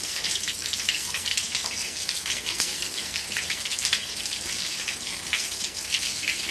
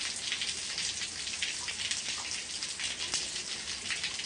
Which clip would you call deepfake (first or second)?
first